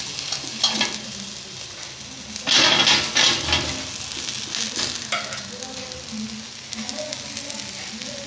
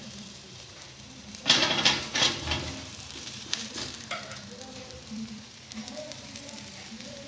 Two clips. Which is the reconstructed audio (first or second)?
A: second